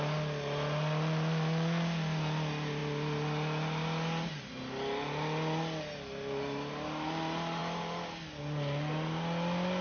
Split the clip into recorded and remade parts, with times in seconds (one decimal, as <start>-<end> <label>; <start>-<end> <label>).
0.0-9.8 recorded